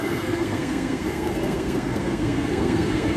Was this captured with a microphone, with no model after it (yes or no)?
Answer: no